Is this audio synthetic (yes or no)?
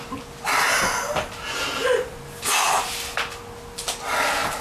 no